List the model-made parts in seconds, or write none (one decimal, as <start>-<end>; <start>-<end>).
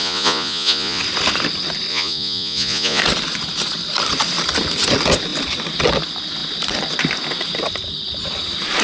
0.0-1.0; 1.9-3.0